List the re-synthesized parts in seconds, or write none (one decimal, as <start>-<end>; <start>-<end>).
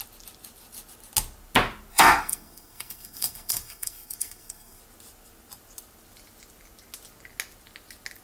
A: 1.9-4.8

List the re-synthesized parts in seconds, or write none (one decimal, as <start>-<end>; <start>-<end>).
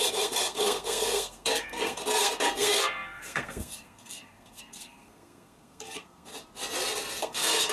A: 0.0-6.3; 7.2-7.7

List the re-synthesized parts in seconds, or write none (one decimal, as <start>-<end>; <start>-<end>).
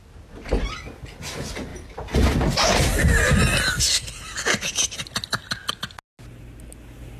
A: none